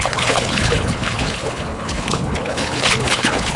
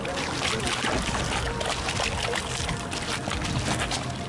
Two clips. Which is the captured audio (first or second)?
second